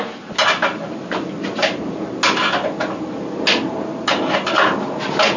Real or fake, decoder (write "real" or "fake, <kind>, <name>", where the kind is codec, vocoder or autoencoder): real